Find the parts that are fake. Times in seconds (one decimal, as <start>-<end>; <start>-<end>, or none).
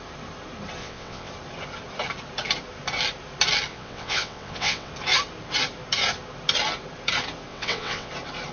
0.8-1.3; 3.7-4.9; 7.5-8.1